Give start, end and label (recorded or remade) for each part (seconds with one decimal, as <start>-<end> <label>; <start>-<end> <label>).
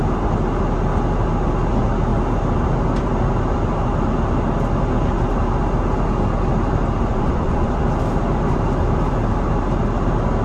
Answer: 0.0-7.1 recorded; 7.1-7.7 remade; 7.7-10.4 recorded